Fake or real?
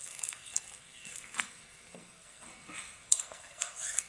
fake